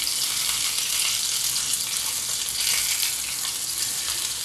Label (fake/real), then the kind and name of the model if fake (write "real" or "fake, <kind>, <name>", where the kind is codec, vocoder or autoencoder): real